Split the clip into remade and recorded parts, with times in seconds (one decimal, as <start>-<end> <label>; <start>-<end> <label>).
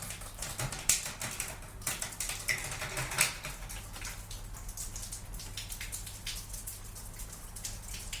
0.0-8.2 recorded